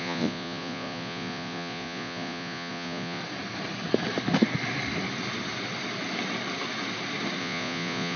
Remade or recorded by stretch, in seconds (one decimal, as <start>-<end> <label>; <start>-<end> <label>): 0.0-3.2 remade; 3.2-7.4 recorded; 7.4-8.2 remade